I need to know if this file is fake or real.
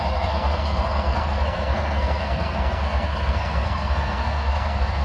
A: fake